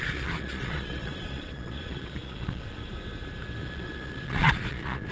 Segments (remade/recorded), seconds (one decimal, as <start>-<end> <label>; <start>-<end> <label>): 0.0-2.8 remade; 2.8-3.6 recorded; 3.6-5.1 remade

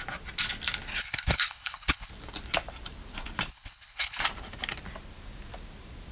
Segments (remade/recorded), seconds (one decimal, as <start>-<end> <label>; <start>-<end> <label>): 0.0-1.0 recorded; 1.0-2.1 remade; 2.1-3.5 recorded; 3.5-4.2 remade; 4.2-6.1 recorded

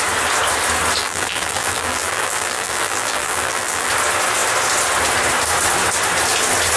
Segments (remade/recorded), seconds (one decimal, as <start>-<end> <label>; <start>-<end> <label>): 0.0-1.0 recorded; 1.0-3.9 remade; 3.9-6.8 recorded

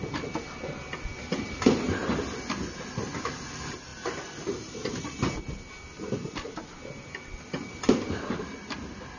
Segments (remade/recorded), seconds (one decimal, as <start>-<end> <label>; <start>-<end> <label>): 0.0-9.2 recorded

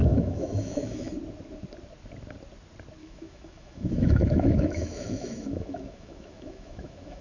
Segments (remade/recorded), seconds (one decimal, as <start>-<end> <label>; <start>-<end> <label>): 0.0-1.1 remade; 1.1-3.0 recorded; 3.0-7.2 remade

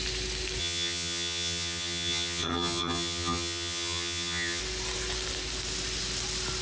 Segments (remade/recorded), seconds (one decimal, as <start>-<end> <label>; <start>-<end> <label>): 0.0-0.6 recorded; 0.6-4.6 remade; 4.6-6.6 recorded

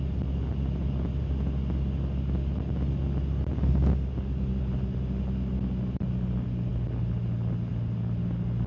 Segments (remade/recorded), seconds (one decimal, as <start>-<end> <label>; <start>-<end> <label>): 0.0-8.7 recorded